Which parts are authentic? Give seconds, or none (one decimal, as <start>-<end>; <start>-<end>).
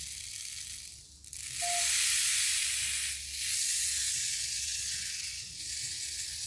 0.0-3.7